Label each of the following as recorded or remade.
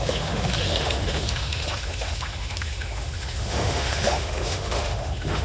remade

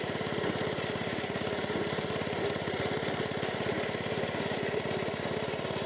recorded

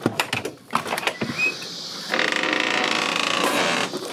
recorded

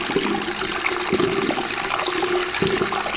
recorded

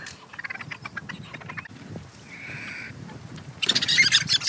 recorded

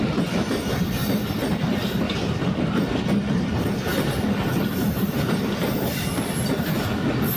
recorded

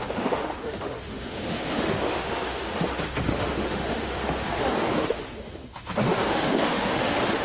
remade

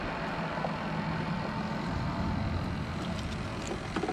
recorded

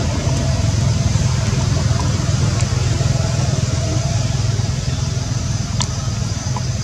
recorded